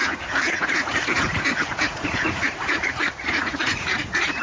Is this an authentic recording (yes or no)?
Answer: no